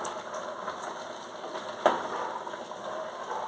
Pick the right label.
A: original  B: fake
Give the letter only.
A